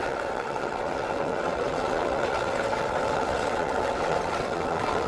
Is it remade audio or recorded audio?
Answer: remade